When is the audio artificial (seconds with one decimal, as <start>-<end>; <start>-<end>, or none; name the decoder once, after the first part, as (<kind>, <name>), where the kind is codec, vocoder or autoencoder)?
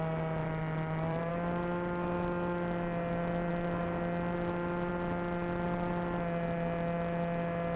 0.4-1.3 (vocoder, BigVGAN v2)